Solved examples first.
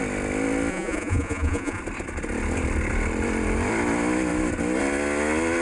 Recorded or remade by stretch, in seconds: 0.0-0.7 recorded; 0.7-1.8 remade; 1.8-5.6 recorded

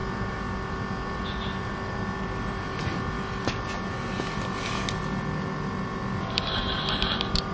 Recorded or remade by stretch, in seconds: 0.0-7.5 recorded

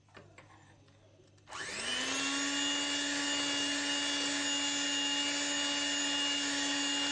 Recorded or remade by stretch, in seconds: 0.0-7.1 recorded

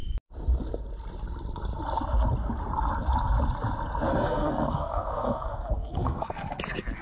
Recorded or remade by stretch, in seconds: 0.0-4.1 recorded; 4.1-6.6 remade; 6.6-7.0 recorded

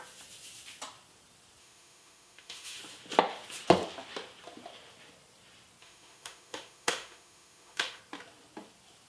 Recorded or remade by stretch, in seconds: 0.0-1.6 recorded; 1.6-2.8 remade; 2.8-5.8 recorded; 5.8-8.0 remade; 8.0-9.1 recorded

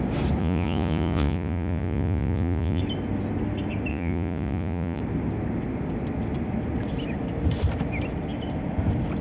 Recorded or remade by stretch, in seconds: 0.0-0.4 recorded; 0.4-2.8 remade; 2.8-3.9 recorded; 3.9-5.0 remade; 5.0-9.2 recorded

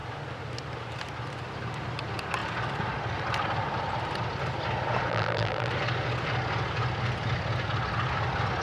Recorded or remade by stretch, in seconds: 0.0-5.1 recorded; 5.1-5.7 remade; 5.7-8.6 recorded